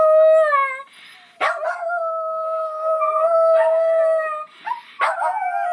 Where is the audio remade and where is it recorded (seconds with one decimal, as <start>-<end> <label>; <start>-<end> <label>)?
0.0-1.7 recorded; 1.7-4.0 remade; 4.0-5.7 recorded